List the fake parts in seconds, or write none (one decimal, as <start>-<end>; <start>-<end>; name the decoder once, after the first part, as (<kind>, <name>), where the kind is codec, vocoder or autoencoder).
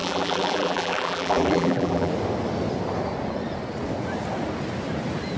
0.0-2.1 (vocoder, BigVGAN v2)